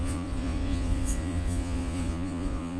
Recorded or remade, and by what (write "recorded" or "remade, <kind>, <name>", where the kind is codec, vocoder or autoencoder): remade, vocoder, Vocos